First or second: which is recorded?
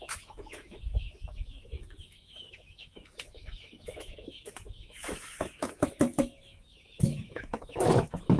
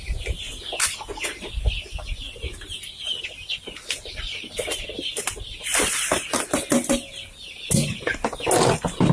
second